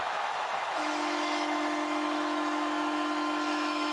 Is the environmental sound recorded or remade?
remade